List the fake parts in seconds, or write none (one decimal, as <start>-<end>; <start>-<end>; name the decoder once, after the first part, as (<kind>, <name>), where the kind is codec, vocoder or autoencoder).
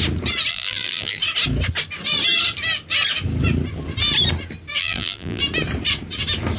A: 0.5-1.2 (vocoder, BigVGAN v2); 4.8-5.4